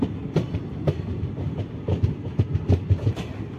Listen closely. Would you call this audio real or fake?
real